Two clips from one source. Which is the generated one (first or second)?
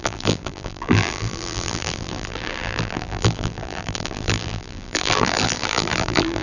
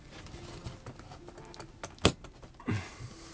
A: first